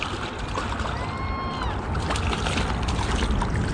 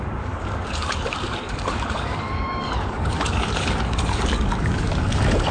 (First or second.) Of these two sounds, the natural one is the first